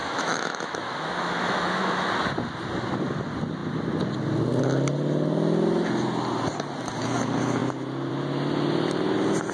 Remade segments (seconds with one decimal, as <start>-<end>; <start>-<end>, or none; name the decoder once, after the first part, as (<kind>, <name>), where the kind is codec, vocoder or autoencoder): 0.0-2.1 (autoencoder, DAC-VAE)